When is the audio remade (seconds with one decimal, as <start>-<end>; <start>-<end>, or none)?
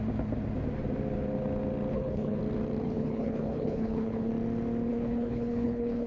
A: 1.9-2.4; 2.8-4.3; 4.9-6.1